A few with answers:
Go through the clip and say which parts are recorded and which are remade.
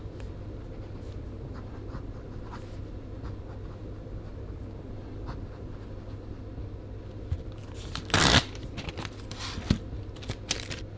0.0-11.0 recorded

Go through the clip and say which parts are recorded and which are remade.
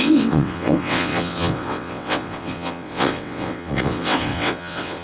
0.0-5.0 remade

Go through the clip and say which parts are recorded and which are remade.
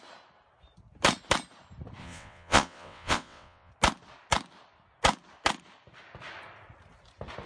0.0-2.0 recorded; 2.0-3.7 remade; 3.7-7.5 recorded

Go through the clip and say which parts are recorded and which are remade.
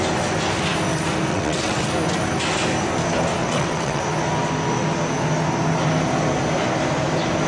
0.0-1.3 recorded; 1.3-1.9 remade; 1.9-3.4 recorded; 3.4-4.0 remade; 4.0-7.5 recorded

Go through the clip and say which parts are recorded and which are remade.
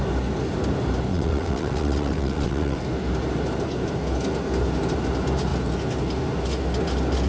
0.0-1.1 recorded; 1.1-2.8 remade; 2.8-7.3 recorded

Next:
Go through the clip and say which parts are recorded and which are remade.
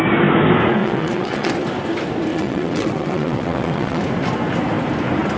0.0-0.8 recorded; 0.8-1.5 remade; 1.5-2.3 recorded; 2.3-4.0 remade; 4.0-5.4 recorded